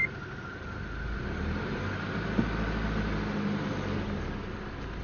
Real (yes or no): yes